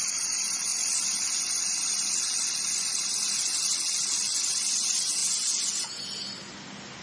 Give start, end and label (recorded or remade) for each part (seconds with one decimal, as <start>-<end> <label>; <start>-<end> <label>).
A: 0.0-5.2 recorded; 5.2-6.0 remade; 6.0-7.0 recorded